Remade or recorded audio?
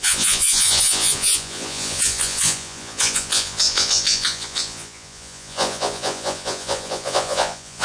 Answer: remade